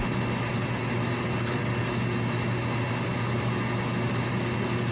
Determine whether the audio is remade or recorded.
recorded